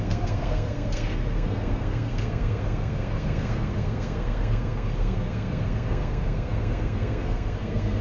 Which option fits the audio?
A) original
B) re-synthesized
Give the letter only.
B